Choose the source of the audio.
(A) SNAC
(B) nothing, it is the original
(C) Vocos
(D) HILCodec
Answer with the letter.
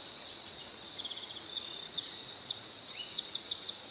C